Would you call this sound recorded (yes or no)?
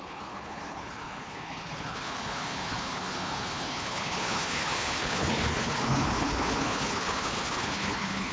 no